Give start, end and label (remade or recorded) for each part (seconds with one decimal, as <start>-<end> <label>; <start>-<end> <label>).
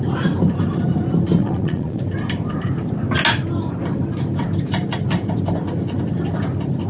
0.0-1.4 recorded; 1.4-2.0 remade; 2.0-6.9 recorded